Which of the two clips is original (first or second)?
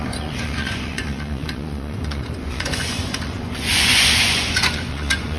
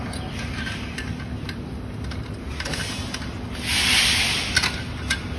second